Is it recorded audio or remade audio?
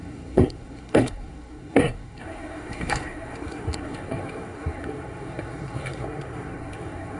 remade